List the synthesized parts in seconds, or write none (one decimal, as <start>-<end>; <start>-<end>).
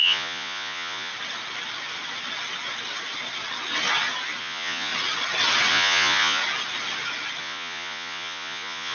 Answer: 0.0-1.1; 4.4-4.9; 5.7-6.4; 7.4-8.9